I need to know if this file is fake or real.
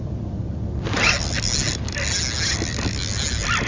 real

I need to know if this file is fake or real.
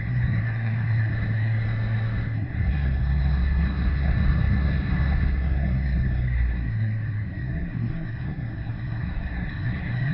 fake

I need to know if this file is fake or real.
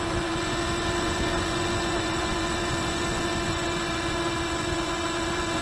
fake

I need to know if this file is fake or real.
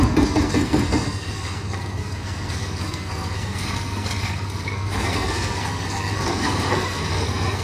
fake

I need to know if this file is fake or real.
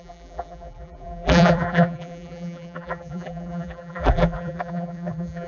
fake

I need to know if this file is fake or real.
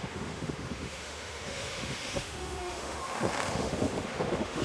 fake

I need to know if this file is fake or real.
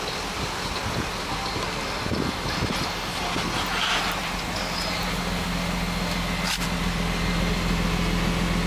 real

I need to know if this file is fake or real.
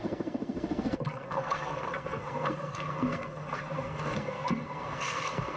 fake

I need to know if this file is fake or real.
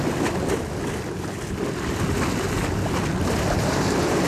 real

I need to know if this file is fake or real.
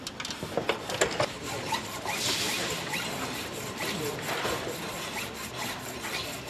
real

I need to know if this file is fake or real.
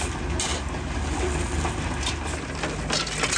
real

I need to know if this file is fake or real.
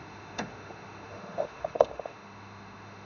fake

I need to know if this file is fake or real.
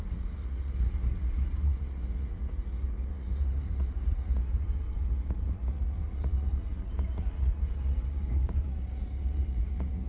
fake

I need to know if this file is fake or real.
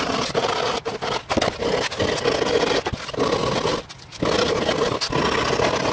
real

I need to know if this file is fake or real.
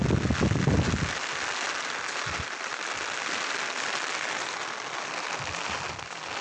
real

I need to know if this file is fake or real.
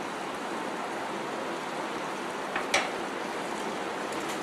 real